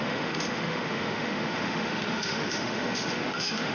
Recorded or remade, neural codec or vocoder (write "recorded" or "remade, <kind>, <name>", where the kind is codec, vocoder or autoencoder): remade, autoencoder, DAC-VAE